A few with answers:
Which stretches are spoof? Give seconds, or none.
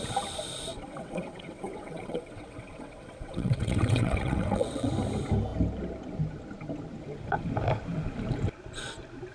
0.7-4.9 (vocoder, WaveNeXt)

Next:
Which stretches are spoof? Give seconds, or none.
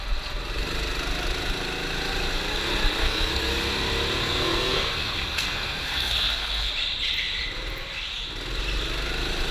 3.0-3.5 (codec, SNAC); 4.2-6.7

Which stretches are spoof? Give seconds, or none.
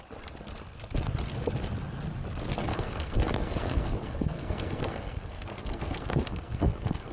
2.7-7.1 (codec, SNAC)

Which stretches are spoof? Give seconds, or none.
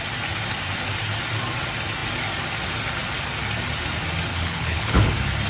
4.3-5.1 (codec, HILCodec)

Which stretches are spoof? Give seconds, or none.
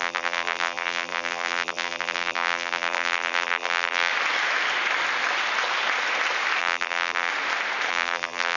0.0-4.1 (vocoder, BigVGAN v2); 6.6-7.3; 7.9-8.6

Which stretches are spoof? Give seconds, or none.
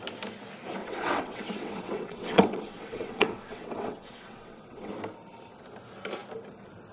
0.8-4.9 (vocoder, WaveNeXt)